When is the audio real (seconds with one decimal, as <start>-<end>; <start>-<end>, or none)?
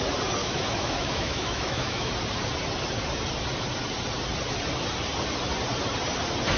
0.0-0.4; 2.1-6.6